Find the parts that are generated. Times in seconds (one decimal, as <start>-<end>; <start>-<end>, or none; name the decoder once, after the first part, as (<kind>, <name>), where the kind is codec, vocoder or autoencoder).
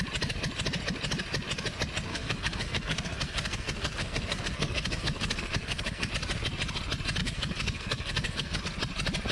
2.1-6.1 (codec, SNAC); 7.2-8.6